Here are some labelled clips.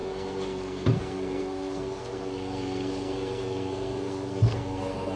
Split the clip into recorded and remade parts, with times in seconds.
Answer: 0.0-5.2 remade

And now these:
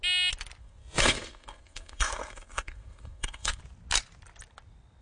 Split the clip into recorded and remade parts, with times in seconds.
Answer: 0.0-0.6 recorded; 0.6-3.6 remade; 3.6-5.0 recorded